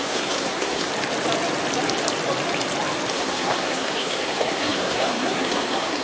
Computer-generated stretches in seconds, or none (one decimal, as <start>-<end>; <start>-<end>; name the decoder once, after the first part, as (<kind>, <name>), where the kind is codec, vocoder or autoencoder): 0.0-0.9 (codec, SNAC); 3.1-6.0